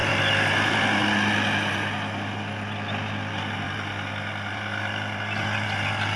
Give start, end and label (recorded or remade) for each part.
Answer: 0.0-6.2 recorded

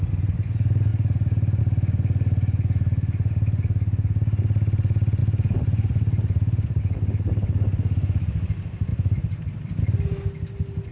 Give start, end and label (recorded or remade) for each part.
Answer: 0.0-5.2 recorded; 5.2-6.8 remade; 6.8-8.9 recorded; 8.9-9.8 remade; 9.8-10.9 recorded

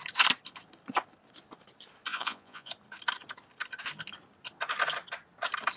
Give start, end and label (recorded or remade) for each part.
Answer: 0.0-2.1 recorded; 2.1-2.7 remade; 2.7-5.8 recorded

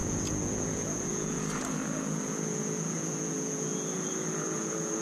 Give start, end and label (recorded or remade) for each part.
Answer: 0.0-5.0 remade

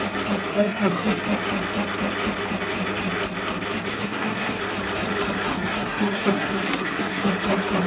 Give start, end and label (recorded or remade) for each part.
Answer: 0.0-0.5 recorded; 0.5-1.2 remade; 1.2-3.9 recorded; 3.9-4.6 remade; 4.6-5.5 recorded; 5.5-7.3 remade; 7.3-7.9 recorded

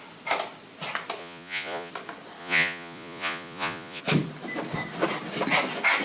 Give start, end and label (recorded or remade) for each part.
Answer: 0.0-1.2 recorded; 1.2-1.9 remade; 1.9-2.4 recorded; 2.4-4.0 remade; 4.0-6.0 recorded